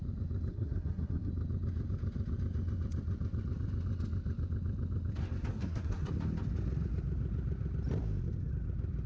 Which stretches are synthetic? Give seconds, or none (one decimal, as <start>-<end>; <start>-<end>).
0.5-1.3; 5.5-6.1